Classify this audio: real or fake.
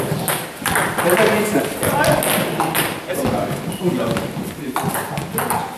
real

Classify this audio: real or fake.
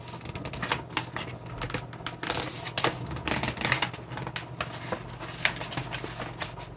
real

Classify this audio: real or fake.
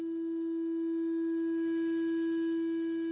real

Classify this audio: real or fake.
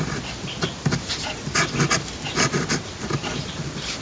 real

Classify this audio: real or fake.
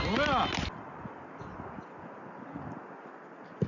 real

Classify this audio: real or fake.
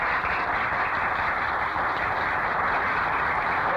real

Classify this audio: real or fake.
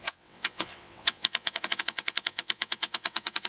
fake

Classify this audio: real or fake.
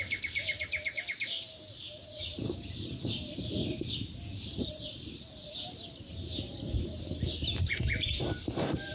fake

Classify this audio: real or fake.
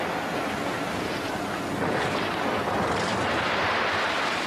real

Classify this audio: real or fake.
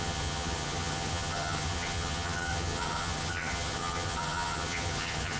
fake